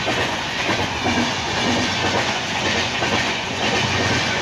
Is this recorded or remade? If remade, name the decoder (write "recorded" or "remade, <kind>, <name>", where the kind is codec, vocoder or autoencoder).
remade, vocoder, Vocos